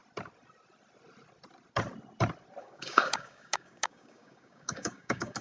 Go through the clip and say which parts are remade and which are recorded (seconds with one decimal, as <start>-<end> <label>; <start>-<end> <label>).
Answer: 0.0-2.6 recorded; 2.6-5.4 remade